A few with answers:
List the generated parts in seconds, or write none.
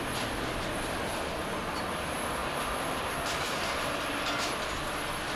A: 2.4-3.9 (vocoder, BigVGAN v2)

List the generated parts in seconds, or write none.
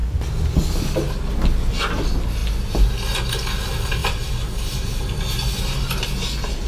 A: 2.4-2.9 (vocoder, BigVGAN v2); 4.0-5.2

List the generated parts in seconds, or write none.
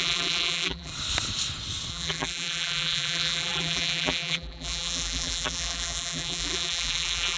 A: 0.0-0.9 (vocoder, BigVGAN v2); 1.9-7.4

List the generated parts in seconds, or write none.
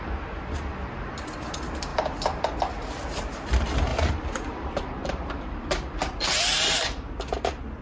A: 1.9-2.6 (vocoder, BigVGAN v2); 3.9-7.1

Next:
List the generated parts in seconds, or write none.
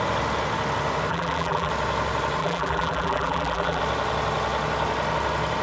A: 1.1-1.7 (vocoder, BigVGAN v2); 2.4-3.8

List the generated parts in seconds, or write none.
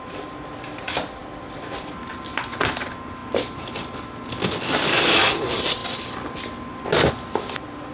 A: 0.0-5.8 (vocoder, BigVGAN v2); 7.1-7.9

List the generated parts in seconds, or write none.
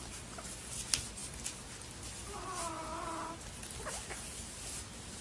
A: none